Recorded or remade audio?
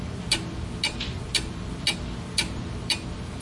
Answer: recorded